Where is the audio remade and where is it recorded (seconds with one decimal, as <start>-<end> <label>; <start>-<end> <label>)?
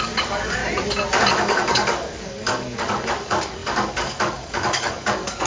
0.0-0.6 remade; 0.6-1.3 recorded; 1.3-5.5 remade